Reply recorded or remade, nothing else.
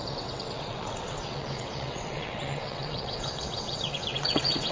remade